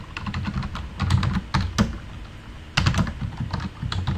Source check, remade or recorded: recorded